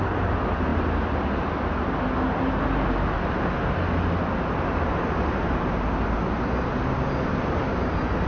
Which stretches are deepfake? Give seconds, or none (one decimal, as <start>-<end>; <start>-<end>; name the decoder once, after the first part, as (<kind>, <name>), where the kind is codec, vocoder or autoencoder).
none